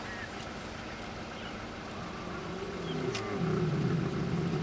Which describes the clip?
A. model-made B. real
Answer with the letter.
B